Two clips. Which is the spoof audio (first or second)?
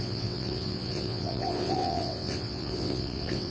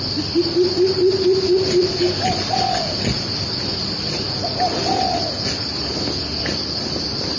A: first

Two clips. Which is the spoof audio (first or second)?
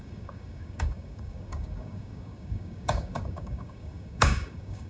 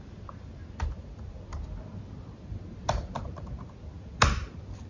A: first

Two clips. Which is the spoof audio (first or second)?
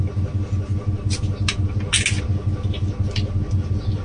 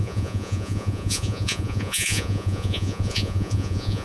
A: second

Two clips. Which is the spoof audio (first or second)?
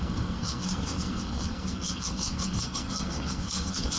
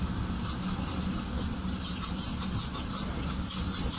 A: first